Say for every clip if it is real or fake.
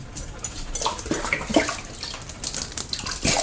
real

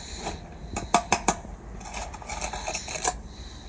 real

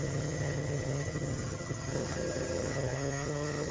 fake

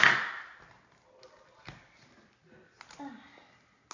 real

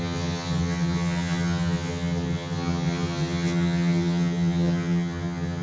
fake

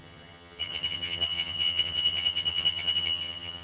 fake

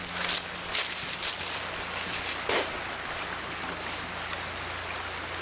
real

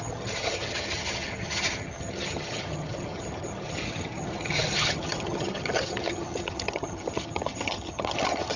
fake